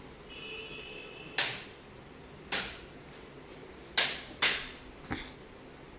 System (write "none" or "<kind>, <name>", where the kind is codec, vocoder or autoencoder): none